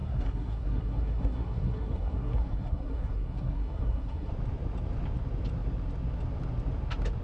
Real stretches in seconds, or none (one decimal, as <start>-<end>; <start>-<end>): 4.3-7.2